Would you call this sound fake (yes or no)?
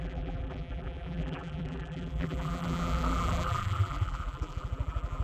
yes